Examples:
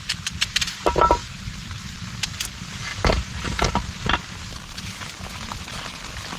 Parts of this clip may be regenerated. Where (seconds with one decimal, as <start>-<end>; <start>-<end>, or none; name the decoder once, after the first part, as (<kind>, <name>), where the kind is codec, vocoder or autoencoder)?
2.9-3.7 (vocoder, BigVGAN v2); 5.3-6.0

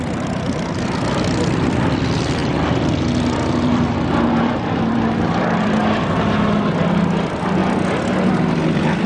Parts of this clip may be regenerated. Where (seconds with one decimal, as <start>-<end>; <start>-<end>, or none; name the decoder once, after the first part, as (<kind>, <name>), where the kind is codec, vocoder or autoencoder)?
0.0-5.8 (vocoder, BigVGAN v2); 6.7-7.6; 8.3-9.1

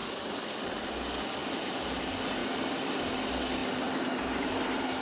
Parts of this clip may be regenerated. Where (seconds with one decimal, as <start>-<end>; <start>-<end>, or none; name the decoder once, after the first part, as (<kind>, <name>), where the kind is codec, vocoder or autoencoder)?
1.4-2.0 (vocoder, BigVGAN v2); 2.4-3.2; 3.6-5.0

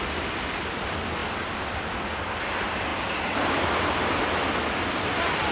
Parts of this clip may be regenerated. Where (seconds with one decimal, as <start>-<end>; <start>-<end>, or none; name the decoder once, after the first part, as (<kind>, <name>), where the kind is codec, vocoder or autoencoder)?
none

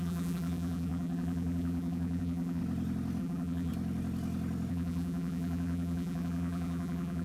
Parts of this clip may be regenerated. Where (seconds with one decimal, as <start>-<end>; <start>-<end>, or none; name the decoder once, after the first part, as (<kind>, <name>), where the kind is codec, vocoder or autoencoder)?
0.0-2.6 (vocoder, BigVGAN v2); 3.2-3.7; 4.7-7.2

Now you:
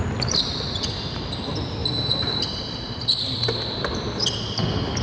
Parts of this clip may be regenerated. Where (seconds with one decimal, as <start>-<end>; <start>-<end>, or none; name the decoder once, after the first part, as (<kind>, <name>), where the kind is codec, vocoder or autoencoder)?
0.0-0.9 (vocoder, BigVGAN v2); 1.8-4.6

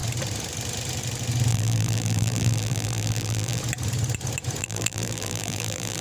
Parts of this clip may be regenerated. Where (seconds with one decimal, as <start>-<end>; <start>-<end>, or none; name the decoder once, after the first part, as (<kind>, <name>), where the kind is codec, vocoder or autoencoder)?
1.5-3.6 (vocoder, BigVGAN v2); 4.6-6.0

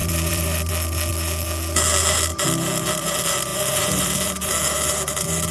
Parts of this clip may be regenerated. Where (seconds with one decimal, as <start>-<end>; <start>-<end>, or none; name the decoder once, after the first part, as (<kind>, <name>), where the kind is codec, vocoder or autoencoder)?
0.0-0.7 (vocoder, BigVGAN v2); 3.5-4.5